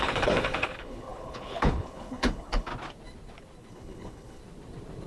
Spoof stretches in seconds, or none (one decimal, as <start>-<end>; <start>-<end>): 0.0-2.7; 3.7-4.4